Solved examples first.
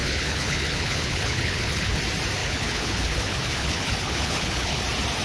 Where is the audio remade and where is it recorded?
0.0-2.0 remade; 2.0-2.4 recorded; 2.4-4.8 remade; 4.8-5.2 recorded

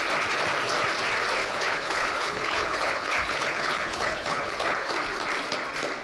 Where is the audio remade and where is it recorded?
0.0-1.4 recorded; 1.4-4.9 remade; 4.9-6.0 recorded

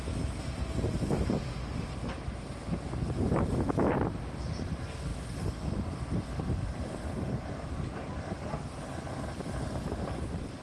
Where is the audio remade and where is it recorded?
0.0-10.6 recorded